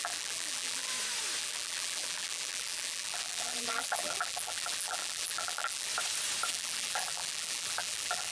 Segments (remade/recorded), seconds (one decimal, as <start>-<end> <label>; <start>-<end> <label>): 0.0-0.9 remade; 0.9-1.4 recorded; 1.4-5.9 remade; 5.9-6.5 recorded; 6.5-8.3 remade